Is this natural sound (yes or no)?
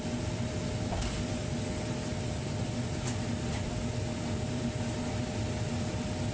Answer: no